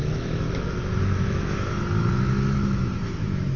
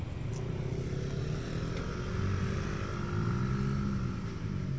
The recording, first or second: second